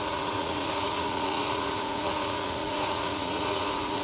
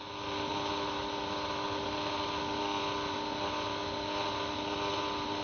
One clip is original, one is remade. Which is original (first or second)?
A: second